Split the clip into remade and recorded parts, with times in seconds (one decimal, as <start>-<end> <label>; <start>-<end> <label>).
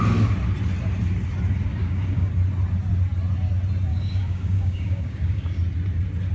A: 0.0-1.8 recorded; 1.8-2.3 remade; 2.3-3.9 recorded; 3.9-5.6 remade; 5.6-6.3 recorded